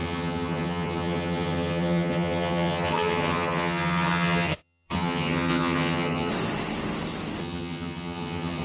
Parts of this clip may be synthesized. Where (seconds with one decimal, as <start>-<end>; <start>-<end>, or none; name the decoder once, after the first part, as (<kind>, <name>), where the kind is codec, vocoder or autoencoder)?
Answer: 0.0-6.3 (vocoder, HiFi-GAN); 7.4-8.6